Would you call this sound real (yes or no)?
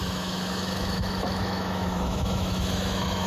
no